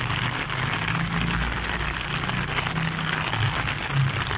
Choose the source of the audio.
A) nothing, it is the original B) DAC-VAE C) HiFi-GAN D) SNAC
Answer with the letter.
A